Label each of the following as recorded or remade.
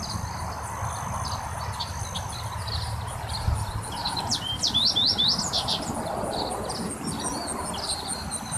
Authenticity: recorded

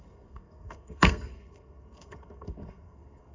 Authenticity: remade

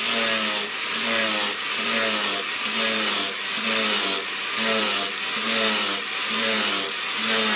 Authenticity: recorded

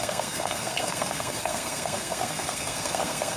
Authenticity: remade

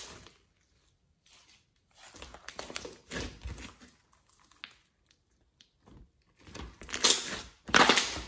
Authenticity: recorded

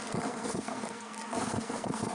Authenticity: remade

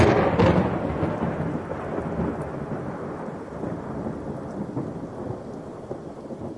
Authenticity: recorded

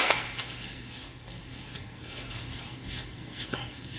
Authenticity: remade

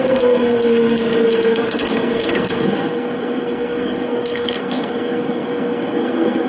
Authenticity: remade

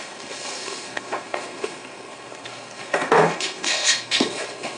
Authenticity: remade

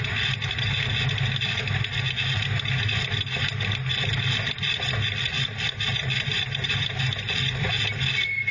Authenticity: recorded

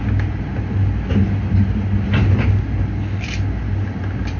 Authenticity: recorded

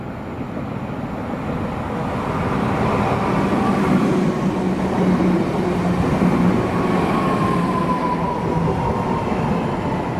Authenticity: recorded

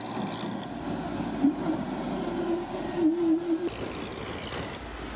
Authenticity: recorded